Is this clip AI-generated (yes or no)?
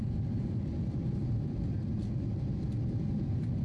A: no